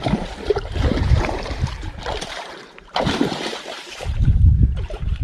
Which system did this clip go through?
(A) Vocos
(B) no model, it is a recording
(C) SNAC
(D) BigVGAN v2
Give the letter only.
D